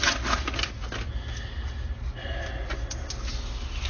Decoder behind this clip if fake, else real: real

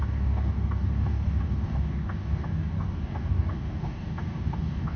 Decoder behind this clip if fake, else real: fake, codec, DAC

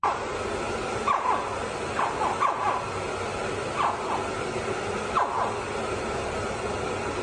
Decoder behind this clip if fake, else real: real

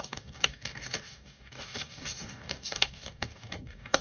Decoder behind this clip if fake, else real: fake, codec, DAC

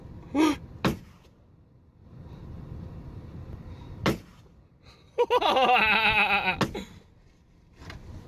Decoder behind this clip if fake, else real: real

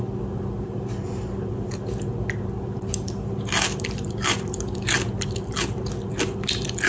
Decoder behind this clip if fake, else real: real